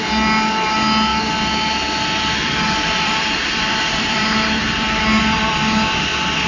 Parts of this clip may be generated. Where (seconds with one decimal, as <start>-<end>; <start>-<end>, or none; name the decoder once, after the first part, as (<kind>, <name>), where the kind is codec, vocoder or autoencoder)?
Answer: 1.1-5.0 (vocoder, BigVGAN v2)